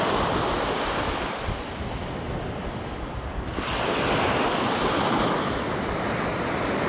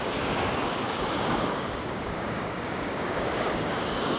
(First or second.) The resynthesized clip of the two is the second